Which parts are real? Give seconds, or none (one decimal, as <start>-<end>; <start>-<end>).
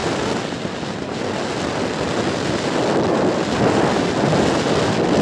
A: 0.0-5.2